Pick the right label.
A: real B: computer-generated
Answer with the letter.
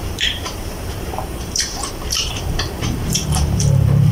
B